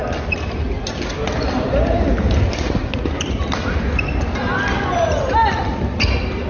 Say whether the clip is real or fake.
real